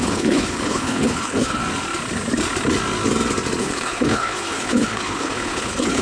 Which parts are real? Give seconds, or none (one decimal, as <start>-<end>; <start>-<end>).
1.6-3.6